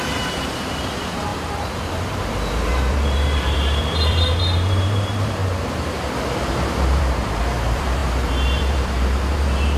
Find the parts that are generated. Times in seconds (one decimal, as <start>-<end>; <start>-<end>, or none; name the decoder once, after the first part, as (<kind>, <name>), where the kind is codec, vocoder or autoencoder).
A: 0.0-5.4 (vocoder, BigVGAN v2); 6.4-9.8